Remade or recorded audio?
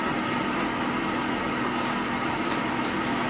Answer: recorded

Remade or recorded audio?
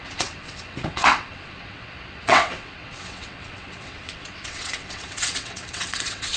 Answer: remade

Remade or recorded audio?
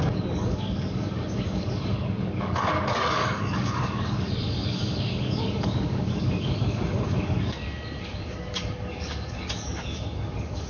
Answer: remade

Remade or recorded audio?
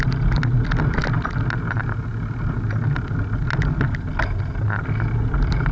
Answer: recorded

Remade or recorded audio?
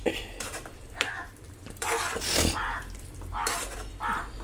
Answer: remade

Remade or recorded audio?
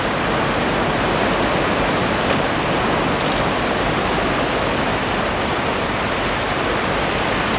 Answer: recorded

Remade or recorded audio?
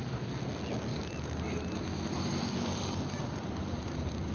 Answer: recorded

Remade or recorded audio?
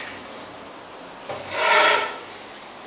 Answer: recorded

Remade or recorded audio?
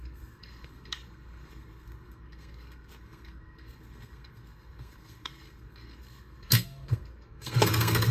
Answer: remade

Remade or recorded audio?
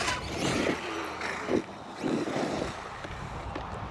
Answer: recorded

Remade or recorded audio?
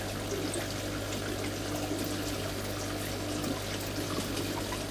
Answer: recorded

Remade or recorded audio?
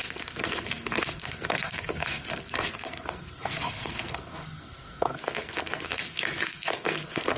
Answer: remade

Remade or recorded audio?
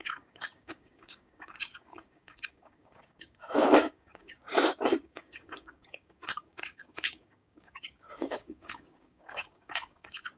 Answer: remade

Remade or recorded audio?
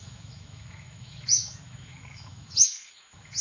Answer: remade